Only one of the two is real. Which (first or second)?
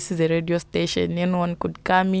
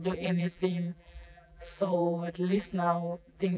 first